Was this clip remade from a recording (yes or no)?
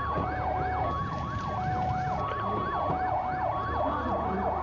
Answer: no